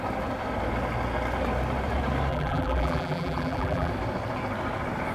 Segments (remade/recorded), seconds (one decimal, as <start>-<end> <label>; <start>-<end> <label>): 0.0-2.3 recorded; 2.3-3.9 remade; 3.9-5.1 recorded